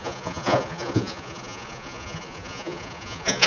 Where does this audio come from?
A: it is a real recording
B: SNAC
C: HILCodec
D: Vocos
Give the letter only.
D